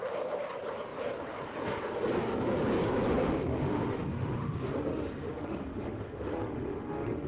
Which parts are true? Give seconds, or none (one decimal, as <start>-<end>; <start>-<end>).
0.0-3.1